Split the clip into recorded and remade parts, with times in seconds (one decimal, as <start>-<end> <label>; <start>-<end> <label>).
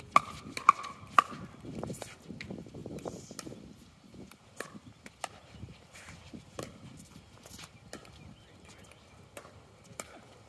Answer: 0.0-10.5 recorded